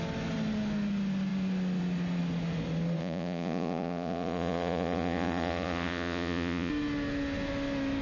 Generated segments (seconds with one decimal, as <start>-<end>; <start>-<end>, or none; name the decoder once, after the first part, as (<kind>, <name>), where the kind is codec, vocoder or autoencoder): 3.0-6.7 (vocoder, Vocos)